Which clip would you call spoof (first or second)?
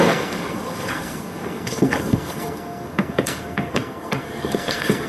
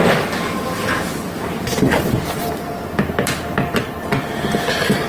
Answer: first